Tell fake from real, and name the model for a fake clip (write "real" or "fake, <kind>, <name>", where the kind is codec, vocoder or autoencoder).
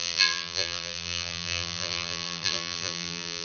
fake, vocoder, BigVGAN v2